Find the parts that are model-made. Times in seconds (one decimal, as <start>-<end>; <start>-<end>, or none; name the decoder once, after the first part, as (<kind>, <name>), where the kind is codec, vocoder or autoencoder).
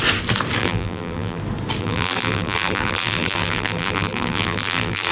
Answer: 0.6-1.4 (vocoder, BigVGAN v2); 1.8-5.1